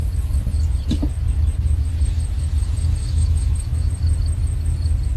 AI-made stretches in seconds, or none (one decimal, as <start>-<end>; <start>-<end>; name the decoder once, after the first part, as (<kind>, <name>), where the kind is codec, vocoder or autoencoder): 3.0-3.9 (autoencoder, DAC-VAE)